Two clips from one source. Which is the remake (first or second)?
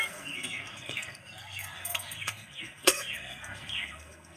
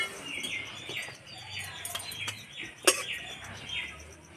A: first